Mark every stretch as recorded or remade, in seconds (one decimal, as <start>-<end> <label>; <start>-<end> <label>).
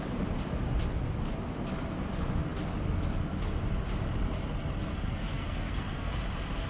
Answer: 0.0-4.9 recorded; 4.9-6.1 remade; 6.1-6.7 recorded